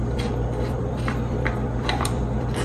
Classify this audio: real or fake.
fake